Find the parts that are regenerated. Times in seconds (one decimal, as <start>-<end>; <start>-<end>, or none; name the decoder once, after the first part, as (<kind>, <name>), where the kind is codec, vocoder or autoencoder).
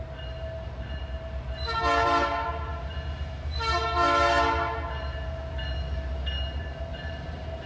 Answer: none